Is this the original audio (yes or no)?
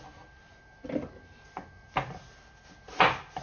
yes